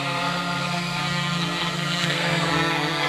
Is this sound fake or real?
fake